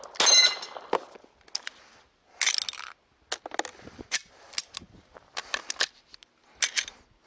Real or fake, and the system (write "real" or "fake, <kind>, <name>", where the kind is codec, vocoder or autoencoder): real